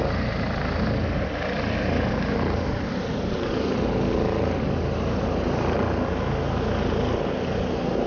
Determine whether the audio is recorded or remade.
recorded